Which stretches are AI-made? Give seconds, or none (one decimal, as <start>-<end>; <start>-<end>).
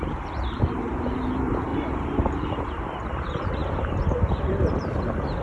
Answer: 0.0-5.4